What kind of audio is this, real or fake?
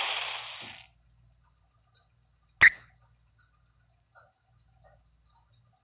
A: real